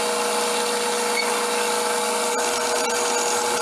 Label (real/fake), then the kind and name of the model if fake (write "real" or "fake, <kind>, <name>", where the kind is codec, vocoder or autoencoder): real